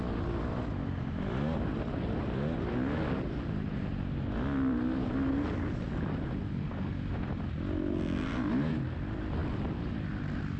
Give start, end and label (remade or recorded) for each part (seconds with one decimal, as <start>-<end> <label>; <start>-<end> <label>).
0.0-10.6 recorded